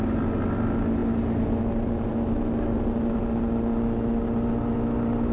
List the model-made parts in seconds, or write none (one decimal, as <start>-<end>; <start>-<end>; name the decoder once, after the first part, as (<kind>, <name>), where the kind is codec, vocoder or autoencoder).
none